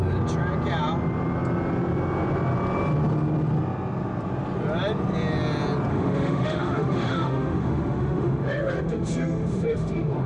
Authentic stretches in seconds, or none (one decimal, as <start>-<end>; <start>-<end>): 0.0-5.9